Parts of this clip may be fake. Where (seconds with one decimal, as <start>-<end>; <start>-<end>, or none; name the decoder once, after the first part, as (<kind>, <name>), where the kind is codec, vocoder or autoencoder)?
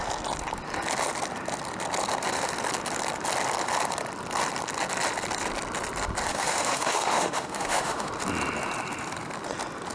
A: 6.3-8.1 (autoencoder, DAC-VAE)